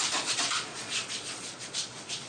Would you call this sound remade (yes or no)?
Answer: yes